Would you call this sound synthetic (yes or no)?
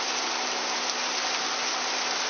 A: no